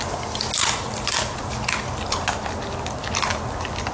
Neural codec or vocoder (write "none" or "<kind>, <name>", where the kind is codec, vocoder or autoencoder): none